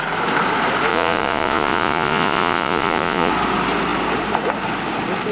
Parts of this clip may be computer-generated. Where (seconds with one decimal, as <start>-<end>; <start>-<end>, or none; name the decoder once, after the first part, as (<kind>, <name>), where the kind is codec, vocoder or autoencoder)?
0.9-3.3 (vocoder, Vocos)